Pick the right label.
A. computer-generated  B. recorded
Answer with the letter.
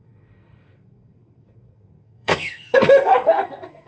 A